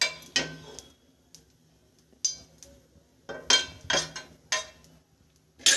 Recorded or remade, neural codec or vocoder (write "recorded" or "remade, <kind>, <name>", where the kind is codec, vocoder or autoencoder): recorded